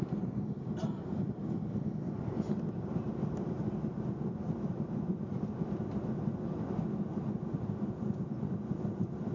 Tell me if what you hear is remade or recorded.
recorded